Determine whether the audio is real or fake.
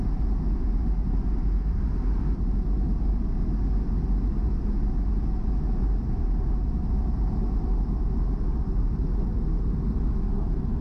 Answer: real